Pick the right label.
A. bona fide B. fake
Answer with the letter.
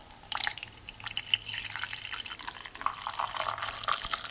A